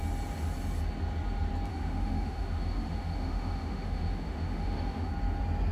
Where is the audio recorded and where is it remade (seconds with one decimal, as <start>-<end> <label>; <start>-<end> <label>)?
0.0-1.7 recorded; 1.7-5.1 remade; 5.1-5.7 recorded